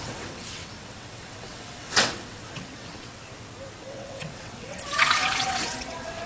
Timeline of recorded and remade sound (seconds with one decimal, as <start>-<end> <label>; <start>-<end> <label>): 0.0-3.2 remade; 3.2-3.8 recorded; 3.8-6.3 remade